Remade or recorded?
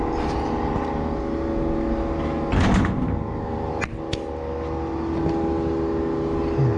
recorded